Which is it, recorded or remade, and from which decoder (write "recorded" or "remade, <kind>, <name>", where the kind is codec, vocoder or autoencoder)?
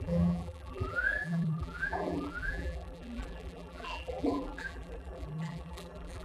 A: remade, vocoder, BigVGAN v2